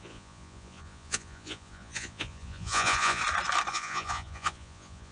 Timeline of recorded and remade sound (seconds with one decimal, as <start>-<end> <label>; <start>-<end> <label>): 0.0-3.2 remade; 3.2-3.7 recorded; 3.7-5.1 remade